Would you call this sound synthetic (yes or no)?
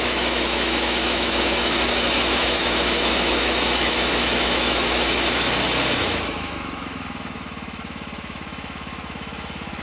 yes